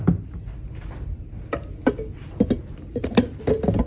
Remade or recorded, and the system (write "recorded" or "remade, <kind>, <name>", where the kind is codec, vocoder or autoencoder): recorded